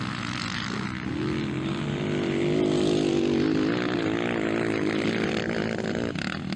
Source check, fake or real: real